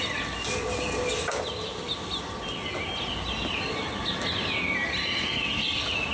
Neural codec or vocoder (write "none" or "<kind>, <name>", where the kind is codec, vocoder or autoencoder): none